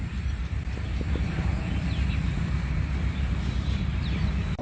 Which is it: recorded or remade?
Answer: recorded